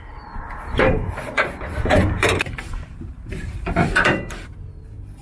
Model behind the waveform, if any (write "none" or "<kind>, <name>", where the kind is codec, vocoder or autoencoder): vocoder, BigVGAN v2